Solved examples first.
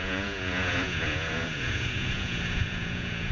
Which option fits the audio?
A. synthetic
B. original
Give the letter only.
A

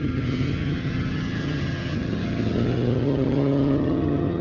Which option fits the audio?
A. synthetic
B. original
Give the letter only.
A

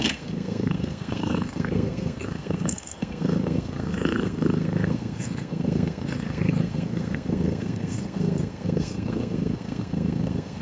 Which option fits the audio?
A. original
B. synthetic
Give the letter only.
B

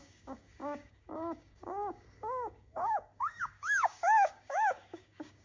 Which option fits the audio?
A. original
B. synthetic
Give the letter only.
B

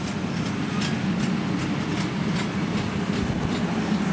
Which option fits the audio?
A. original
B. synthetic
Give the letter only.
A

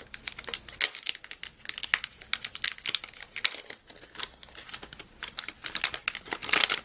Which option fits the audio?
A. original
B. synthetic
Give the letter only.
A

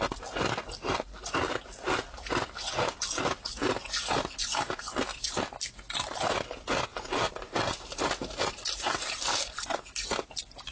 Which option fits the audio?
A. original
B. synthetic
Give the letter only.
A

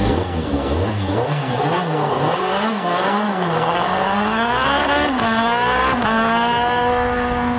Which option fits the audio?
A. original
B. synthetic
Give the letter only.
B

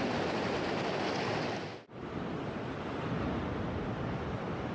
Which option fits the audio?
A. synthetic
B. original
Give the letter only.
B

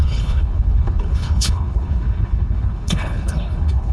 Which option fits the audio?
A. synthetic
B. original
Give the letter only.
A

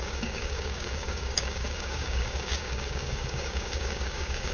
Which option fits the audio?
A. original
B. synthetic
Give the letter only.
B